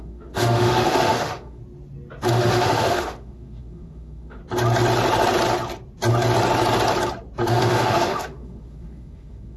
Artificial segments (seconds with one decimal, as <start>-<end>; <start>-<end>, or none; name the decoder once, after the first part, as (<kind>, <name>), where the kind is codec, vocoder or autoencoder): 0.0-1.6 (autoencoder, DAC-VAE); 2.3-4.4; 7.5-9.6